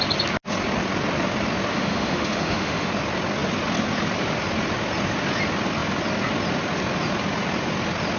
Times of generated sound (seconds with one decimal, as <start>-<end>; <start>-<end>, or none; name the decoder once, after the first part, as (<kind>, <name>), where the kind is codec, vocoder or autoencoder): 1.7-2.9 (autoencoder, DAC-VAE)